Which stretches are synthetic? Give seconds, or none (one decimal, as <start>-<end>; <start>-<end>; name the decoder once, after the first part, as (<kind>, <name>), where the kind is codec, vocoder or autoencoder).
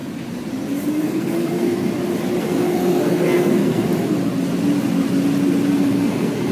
0.9-1.9 (codec, SNAC); 2.4-3.9; 5.7-6.5